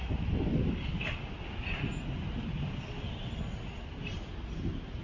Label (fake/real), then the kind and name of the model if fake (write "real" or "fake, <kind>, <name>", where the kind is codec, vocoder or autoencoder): real